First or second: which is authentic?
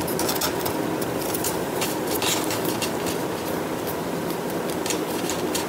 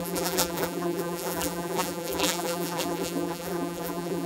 first